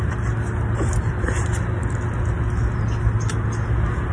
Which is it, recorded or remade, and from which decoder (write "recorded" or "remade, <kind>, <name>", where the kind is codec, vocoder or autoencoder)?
recorded